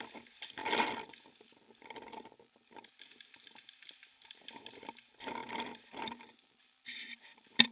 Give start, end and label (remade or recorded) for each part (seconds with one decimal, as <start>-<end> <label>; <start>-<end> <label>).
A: 0.0-7.7 remade